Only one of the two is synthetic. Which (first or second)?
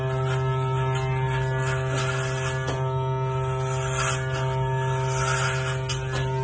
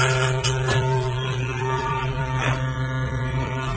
second